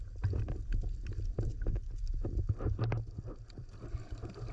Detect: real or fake real